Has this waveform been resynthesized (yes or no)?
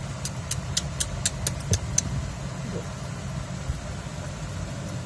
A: no